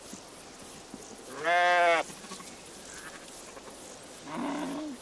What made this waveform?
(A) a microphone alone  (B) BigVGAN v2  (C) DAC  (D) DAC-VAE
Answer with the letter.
A